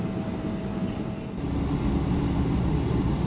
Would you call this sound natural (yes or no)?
yes